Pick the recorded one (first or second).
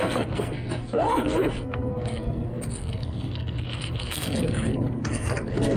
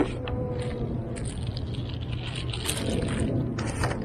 second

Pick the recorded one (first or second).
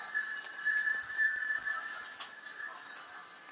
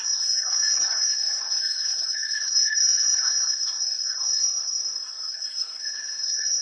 first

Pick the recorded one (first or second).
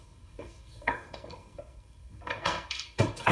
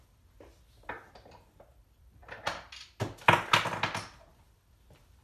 second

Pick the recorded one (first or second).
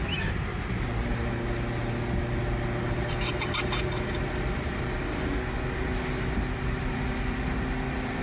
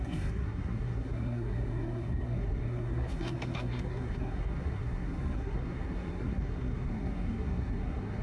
first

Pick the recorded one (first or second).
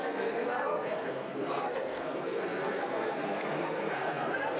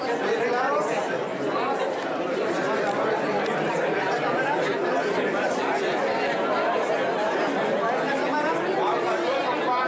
second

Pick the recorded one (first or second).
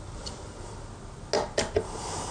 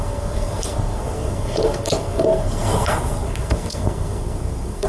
first